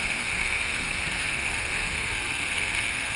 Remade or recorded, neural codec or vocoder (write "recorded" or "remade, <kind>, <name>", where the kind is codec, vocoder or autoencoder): remade, codec, SNAC